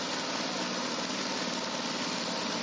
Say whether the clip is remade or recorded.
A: recorded